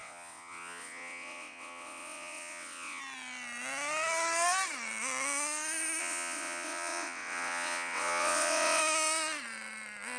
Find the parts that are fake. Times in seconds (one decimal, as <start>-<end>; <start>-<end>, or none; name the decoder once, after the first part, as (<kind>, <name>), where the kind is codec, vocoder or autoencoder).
0.0-3.0 (vocoder, WaveNeXt); 6.0-8.8